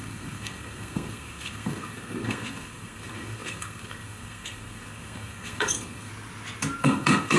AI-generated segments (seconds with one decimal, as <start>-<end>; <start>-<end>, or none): 0.0-6.1; 6.8-7.4